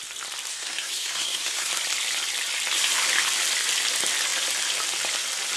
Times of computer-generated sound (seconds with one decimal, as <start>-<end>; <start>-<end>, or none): 0.5-1.7